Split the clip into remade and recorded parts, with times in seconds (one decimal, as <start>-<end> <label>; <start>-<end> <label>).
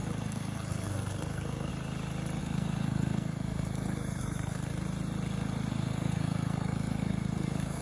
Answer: 0.0-1.7 remade; 1.7-2.4 recorded; 2.4-4.7 remade; 4.7-5.7 recorded; 5.7-7.8 remade